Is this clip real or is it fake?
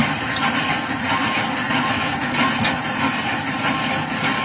real